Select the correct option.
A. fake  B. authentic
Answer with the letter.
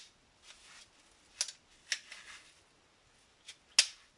B